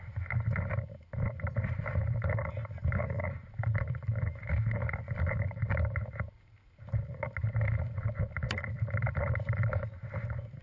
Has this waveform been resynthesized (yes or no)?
no